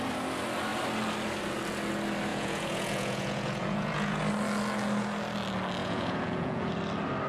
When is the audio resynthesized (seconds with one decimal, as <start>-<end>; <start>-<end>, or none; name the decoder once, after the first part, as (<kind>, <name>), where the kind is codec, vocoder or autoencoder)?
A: 2.3-4.2 (vocoder, Vocos); 5.8-6.7